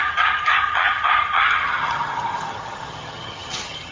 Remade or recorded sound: remade